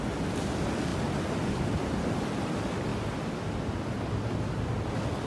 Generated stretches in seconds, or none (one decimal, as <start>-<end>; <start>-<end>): none

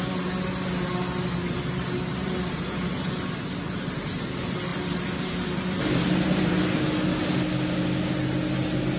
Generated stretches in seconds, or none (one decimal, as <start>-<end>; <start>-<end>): 4.7-6.5

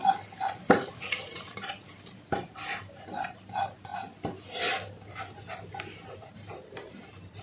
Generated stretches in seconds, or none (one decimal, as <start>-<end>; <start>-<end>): 0.0-3.9; 6.3-7.4

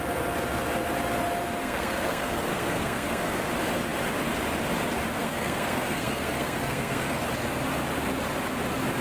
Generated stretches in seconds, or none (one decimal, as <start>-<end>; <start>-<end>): 1.6-3.5; 5.2-7.2

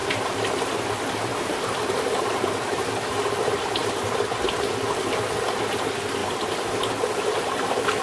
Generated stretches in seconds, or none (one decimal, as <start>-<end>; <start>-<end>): 1.3-3.3; 6.2-8.0

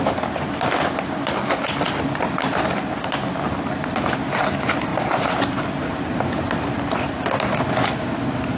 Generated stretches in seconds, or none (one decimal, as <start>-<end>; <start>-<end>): none

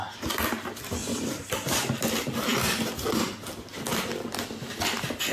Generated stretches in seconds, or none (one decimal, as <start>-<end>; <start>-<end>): none

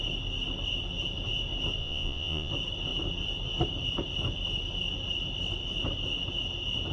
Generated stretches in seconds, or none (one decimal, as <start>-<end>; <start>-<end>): 1.8-2.5